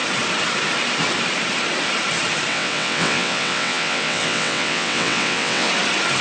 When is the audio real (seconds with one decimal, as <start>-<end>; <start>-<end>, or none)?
0.0-2.5; 5.7-6.2